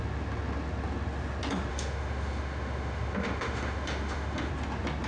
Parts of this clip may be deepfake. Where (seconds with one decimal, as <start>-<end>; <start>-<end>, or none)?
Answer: 1.7-4.5